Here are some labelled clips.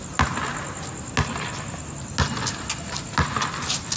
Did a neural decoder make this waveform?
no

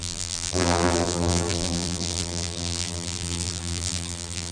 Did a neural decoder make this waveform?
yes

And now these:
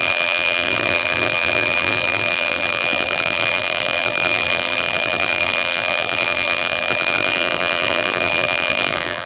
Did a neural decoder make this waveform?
yes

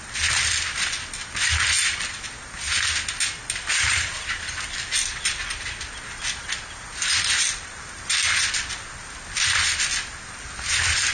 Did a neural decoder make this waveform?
no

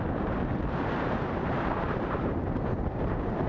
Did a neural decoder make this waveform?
yes